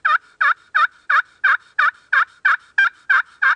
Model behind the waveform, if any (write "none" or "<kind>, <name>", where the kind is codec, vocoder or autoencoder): none